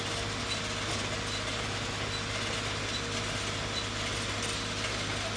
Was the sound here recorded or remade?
recorded